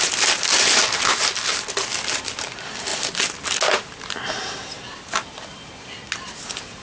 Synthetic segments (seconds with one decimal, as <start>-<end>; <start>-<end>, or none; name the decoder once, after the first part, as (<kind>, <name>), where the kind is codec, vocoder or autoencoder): none